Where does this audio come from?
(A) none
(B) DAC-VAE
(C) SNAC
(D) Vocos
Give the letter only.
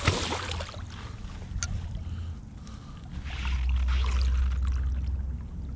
A